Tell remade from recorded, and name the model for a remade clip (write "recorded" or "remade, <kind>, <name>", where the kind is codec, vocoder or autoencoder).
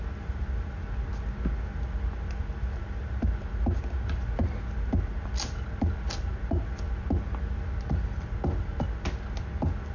recorded